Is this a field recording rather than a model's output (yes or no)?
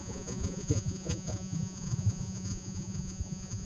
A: no